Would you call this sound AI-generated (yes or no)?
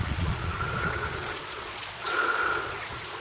yes